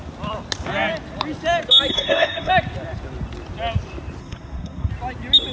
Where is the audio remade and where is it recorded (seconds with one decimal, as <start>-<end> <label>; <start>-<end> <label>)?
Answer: 0.0-1.9 recorded; 1.9-2.5 remade; 2.5-4.2 recorded; 4.2-4.9 remade; 4.9-5.5 recorded